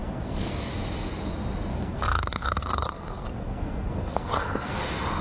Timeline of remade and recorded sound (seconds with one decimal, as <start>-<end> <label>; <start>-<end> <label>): 0.0-0.7 remade; 0.7-1.7 recorded; 1.7-4.8 remade; 4.8-5.2 recorded